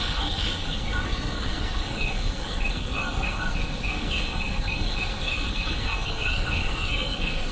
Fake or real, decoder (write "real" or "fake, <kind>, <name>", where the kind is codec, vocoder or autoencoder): fake, codec, SNAC